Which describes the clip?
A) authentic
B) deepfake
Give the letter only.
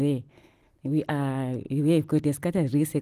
A